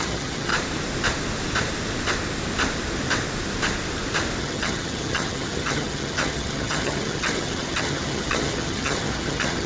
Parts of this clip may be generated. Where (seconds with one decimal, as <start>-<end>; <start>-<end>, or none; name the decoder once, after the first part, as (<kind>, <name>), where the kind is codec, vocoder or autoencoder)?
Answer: 0.0-0.5 (vocoder, HiFi-GAN); 4.4-9.7

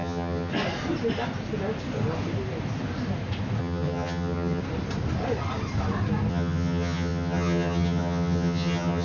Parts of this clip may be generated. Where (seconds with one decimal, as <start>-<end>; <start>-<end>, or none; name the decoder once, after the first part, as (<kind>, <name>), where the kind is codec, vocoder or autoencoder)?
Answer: 0.0-0.5 (vocoder, HiFi-GAN); 3.6-4.6; 6.3-9.0

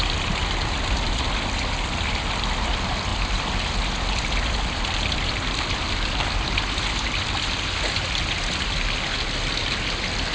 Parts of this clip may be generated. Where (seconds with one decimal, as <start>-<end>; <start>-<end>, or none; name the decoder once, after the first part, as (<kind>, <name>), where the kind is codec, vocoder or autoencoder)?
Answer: none

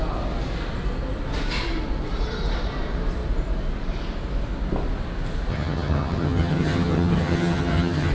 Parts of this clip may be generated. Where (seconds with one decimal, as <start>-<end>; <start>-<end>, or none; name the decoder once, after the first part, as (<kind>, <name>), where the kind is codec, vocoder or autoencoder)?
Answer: 5.5-8.1 (vocoder, HiFi-GAN)